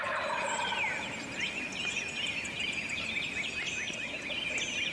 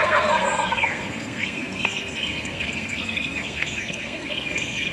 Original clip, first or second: first